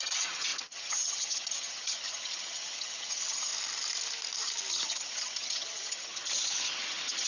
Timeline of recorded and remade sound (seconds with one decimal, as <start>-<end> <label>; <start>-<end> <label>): 0.0-3.5 remade; 3.5-4.7 recorded; 4.7-7.3 remade